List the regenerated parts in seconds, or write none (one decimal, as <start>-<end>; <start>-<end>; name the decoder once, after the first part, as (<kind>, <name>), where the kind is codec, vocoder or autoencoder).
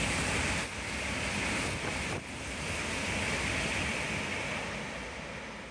none